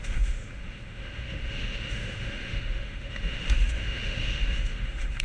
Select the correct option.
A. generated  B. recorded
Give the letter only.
A